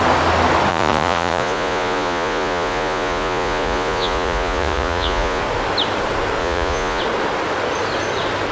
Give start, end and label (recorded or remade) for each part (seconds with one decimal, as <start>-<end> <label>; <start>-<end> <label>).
0.0-0.7 recorded; 0.7-5.4 remade; 5.4-6.4 recorded; 6.4-7.0 remade; 7.0-8.5 recorded